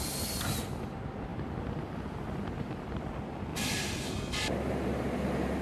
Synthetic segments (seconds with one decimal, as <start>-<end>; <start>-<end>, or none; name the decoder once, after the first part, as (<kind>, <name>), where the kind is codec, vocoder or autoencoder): 1.3-3.1 (vocoder, BigVGAN v2); 3.5-4.1